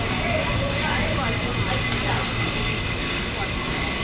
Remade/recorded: recorded